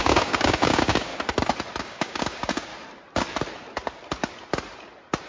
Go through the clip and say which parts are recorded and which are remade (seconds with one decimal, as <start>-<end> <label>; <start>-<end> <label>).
0.0-1.1 remade; 1.1-1.8 recorded; 1.8-2.7 remade; 2.7-5.3 recorded

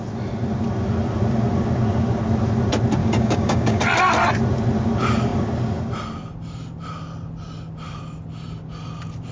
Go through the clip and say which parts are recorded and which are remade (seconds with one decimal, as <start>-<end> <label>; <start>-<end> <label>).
0.0-3.0 recorded; 3.0-3.8 remade; 3.8-9.3 recorded